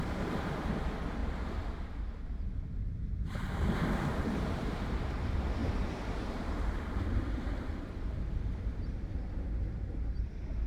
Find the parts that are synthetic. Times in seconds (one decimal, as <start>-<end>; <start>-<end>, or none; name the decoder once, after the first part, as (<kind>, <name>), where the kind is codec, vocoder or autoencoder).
0.0-1.2 (vocoder, BigVGAN v2); 2.3-10.7